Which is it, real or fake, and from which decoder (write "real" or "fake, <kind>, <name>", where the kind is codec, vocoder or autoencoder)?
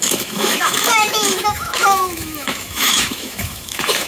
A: fake, autoencoder, DAC-VAE